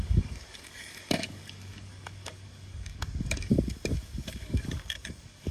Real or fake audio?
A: fake